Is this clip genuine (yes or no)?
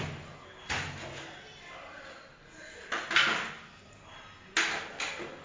yes